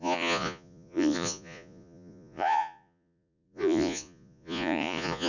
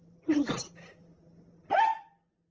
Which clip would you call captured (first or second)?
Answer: second